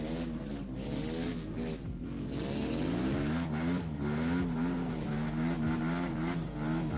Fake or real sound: real